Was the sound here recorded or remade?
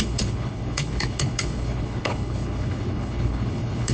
remade